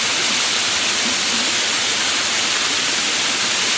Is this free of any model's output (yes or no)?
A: yes